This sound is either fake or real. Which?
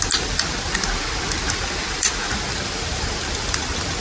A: real